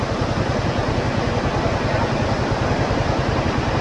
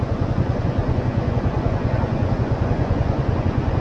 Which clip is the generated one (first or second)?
second